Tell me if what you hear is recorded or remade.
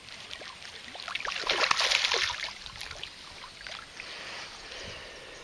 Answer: recorded